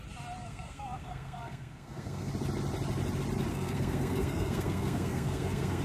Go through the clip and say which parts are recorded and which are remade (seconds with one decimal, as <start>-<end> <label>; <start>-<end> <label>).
0.0-0.4 recorded; 0.4-2.3 remade; 2.3-3.5 recorded; 3.5-5.8 remade

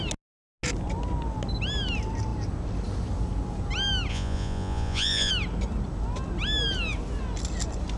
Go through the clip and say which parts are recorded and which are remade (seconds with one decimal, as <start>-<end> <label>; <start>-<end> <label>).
0.0-4.1 recorded; 4.1-5.3 remade; 5.3-8.0 recorded

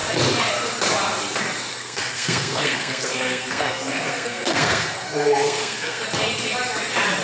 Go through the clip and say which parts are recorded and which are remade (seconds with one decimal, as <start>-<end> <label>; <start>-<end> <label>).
0.0-1.7 recorded; 1.7-6.0 remade; 6.0-7.2 recorded